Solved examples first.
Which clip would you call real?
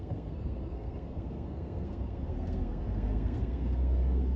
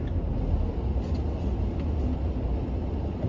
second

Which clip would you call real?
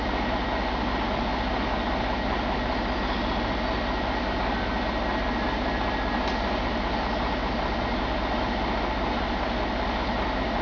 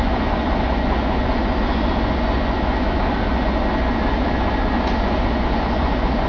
first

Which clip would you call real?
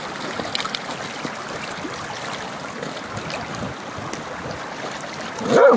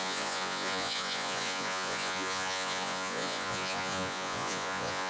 first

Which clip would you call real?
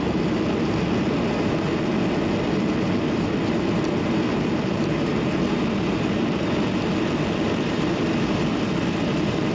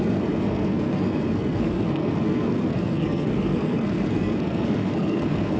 first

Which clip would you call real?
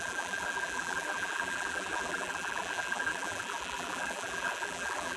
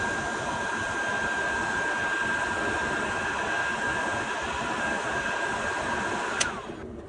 second